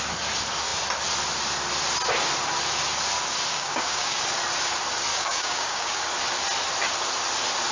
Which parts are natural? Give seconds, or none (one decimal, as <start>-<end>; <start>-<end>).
0.0-3.5; 4.2-5.1; 6.0-7.7